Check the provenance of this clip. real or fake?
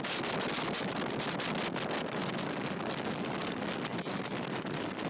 real